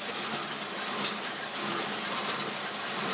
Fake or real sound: real